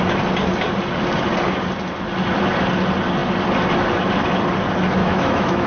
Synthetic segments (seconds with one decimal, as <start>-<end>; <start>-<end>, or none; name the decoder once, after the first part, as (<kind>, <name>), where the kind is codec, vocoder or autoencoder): 5.0-5.7 (autoencoder, DAC-VAE)